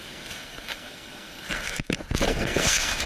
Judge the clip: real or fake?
fake